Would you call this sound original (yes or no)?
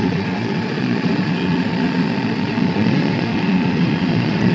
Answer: no